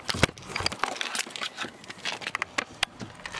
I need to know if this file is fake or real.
real